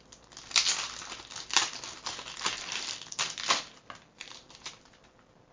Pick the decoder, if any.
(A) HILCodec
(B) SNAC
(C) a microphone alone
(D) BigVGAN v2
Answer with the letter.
C